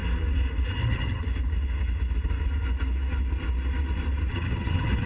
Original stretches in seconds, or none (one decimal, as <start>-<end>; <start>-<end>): 0.0-0.7; 1.2-4.3

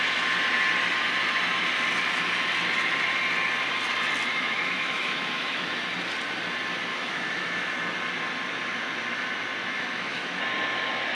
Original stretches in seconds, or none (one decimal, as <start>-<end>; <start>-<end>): 0.0-4.3; 5.7-6.9; 7.7-9.6; 10.4-11.1

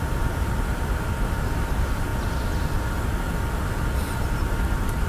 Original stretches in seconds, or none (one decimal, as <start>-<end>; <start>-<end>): 0.0-5.1

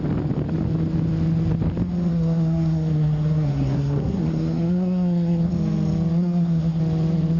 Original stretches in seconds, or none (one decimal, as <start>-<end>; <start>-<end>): 0.0-2.1; 5.5-6.2; 6.8-7.4

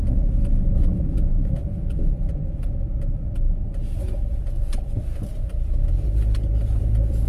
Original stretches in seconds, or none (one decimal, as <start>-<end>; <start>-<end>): 0.4-4.8

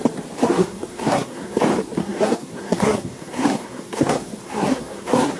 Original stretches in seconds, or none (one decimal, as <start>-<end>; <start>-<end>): 0.0-0.4; 1.6-2.0

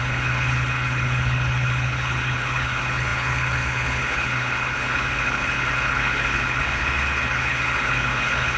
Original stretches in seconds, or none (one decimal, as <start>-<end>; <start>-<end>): none